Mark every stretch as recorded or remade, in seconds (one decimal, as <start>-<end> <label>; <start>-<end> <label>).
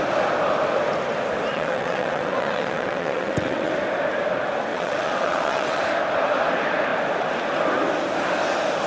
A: 0.0-1.5 recorded; 1.5-3.7 remade; 3.7-4.7 recorded; 4.7-5.8 remade; 5.8-8.9 recorded